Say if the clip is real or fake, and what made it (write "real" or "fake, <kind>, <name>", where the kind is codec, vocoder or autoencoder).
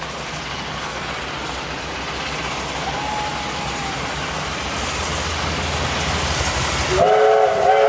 real